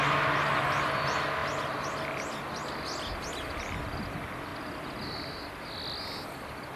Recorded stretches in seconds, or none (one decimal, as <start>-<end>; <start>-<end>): 0.0-6.8